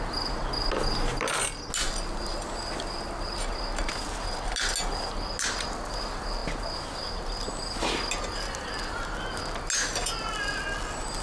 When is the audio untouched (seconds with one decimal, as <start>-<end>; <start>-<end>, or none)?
0.0-11.2